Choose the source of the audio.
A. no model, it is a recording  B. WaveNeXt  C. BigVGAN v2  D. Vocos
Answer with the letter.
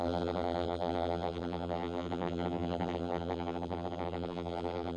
C